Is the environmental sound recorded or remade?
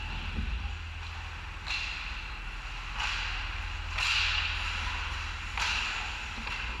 recorded